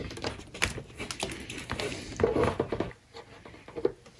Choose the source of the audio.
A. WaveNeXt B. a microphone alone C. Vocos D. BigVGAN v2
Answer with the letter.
B